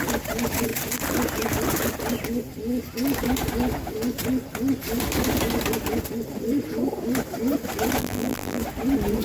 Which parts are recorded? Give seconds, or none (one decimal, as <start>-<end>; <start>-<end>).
0.0-8.0; 8.6-9.2